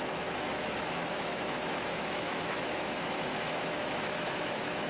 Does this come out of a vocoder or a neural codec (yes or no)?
yes